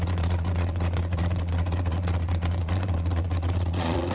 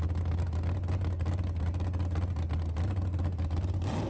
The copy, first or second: first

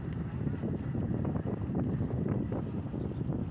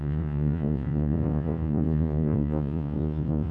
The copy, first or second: second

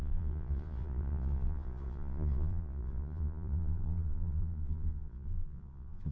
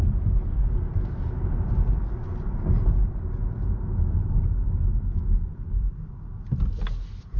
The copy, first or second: first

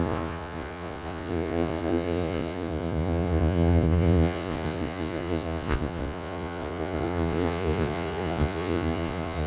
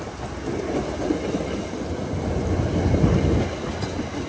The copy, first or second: first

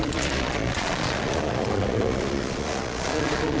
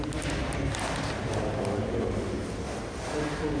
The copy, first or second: first